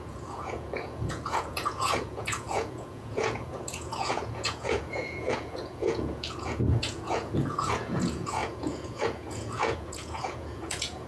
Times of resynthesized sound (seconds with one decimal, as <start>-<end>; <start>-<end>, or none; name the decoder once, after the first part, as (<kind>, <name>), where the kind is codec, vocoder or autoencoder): 0.0-11.1 (vocoder, Vocos)